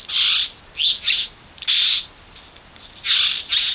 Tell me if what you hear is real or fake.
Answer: real